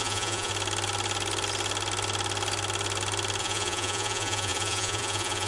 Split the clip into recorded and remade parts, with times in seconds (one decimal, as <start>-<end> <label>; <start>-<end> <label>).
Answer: 0.0-0.5 remade; 0.5-3.4 recorded; 3.4-5.5 remade